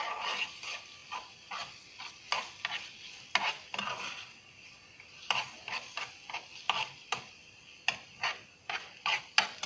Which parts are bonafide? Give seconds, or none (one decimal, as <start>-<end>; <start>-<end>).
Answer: 0.0-9.7